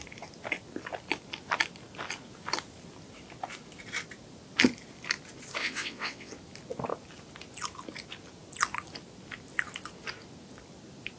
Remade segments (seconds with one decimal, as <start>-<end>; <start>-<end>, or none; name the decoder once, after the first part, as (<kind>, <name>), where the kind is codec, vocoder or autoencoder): 5.6-6.3 (vocoder, WaveNeXt)